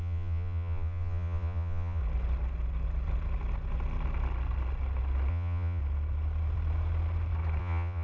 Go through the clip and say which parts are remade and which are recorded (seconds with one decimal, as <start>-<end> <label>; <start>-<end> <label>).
0.0-2.0 remade; 2.0-5.3 recorded; 5.3-5.8 remade; 5.8-7.6 recorded; 7.6-8.0 remade